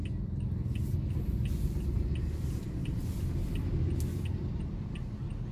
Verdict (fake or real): real